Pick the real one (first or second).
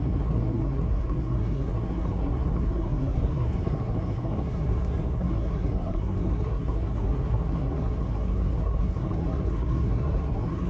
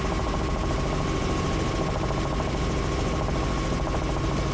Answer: second